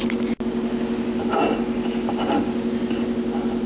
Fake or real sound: real